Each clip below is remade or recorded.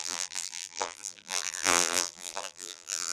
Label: remade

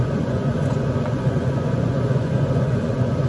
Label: remade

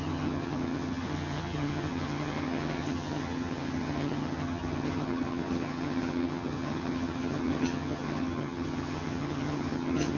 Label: remade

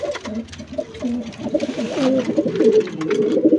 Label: recorded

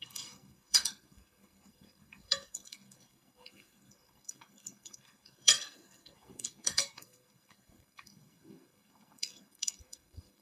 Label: remade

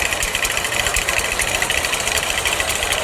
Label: remade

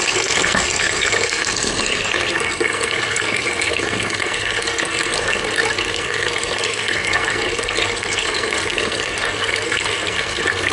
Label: remade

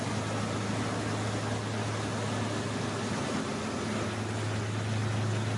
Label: recorded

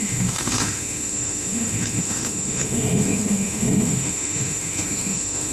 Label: remade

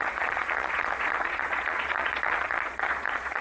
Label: remade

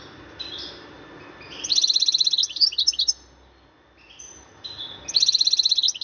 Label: recorded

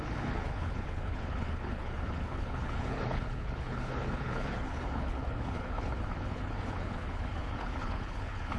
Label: remade